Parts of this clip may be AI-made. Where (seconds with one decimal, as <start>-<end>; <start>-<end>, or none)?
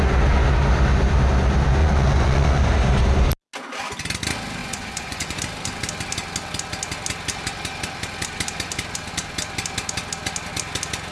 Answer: 1.8-2.7; 4.6-5.4